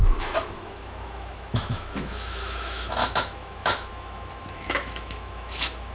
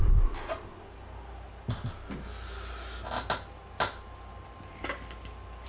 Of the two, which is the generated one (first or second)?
first